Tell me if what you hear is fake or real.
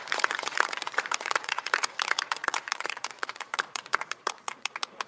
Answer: fake